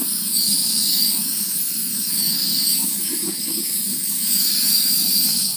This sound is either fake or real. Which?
fake